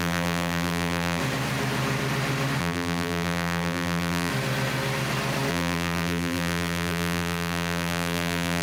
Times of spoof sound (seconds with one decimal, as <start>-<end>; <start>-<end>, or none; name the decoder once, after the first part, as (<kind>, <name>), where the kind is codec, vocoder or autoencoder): 0.0-1.2 (vocoder, BigVGAN v2); 2.6-4.3; 5.5-8.6